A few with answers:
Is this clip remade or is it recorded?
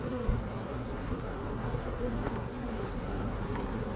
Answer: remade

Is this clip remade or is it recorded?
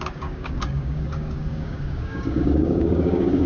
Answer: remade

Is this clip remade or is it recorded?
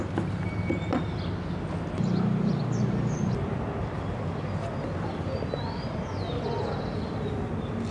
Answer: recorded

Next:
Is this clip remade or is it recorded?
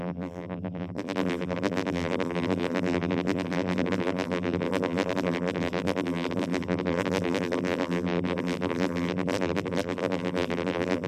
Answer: remade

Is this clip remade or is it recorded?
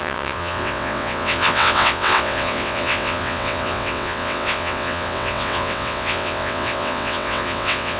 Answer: remade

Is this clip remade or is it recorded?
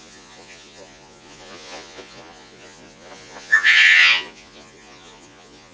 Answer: remade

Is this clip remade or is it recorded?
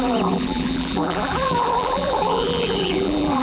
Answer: remade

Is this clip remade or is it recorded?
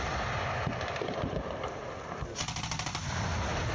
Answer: recorded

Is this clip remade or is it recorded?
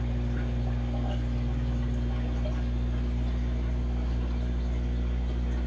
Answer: recorded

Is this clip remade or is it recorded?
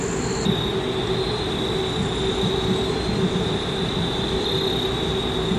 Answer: recorded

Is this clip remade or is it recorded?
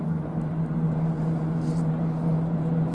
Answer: recorded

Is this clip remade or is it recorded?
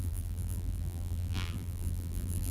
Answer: remade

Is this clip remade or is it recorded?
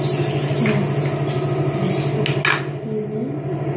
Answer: recorded